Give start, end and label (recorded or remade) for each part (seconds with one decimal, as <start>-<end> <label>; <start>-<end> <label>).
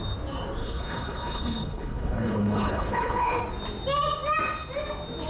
0.0-0.6 recorded; 0.6-3.4 remade; 3.4-5.3 recorded